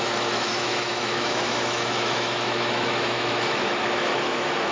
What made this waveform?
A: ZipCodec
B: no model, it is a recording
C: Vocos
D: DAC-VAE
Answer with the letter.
D